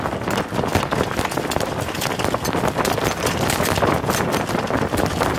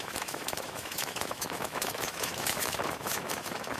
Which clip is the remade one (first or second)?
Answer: second